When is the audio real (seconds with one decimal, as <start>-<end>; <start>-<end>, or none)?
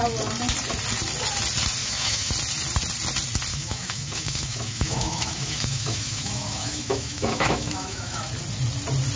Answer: 0.0-1.8; 2.3-3.5; 8.3-9.2